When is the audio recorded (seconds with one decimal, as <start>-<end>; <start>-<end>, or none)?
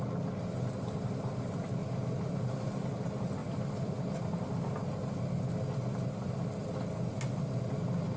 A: 0.0-1.8; 2.4-3.4; 4.3-6.6; 7.2-8.2